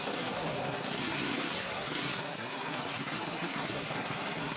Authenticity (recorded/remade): remade